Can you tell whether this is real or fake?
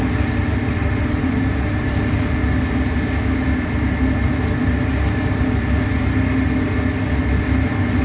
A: real